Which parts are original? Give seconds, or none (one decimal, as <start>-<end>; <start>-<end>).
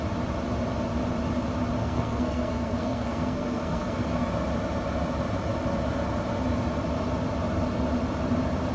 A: 0.0-1.8; 4.3-8.7